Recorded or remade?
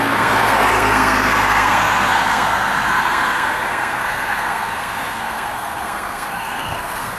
remade